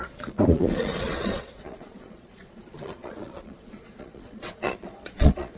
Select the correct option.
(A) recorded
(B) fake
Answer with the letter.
B